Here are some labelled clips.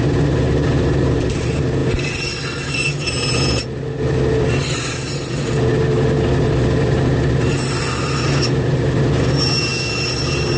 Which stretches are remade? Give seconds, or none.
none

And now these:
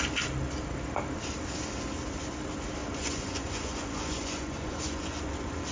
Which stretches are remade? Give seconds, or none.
2.8-5.7 (vocoder, Vocos)

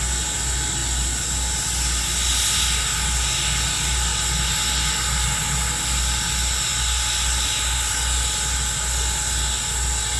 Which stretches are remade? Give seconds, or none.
none

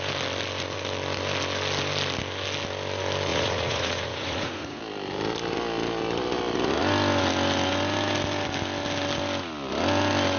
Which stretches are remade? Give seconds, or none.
3.3-4.8 (vocoder, Vocos)